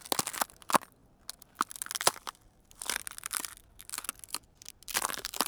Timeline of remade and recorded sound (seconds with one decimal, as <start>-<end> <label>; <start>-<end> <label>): 0.0-5.5 recorded